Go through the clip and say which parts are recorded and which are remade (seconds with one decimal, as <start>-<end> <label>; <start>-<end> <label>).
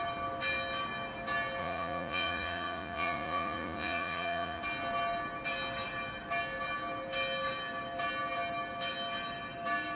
0.0-1.6 recorded; 1.6-4.6 remade; 4.6-10.0 recorded